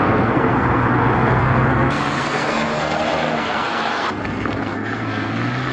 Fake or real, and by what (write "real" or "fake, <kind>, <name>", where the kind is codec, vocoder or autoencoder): fake, codec, SNAC